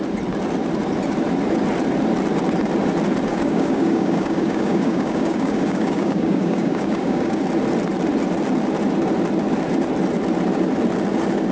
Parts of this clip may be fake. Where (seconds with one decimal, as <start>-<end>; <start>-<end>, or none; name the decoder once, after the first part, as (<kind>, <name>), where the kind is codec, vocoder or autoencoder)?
3.3-7.4 (codec, DAC)